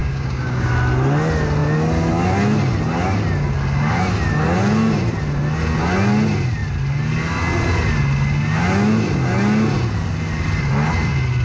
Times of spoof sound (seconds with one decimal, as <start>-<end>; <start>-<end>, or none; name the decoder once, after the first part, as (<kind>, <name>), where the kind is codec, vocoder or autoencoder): 0.0-0.7 (codec, DAC)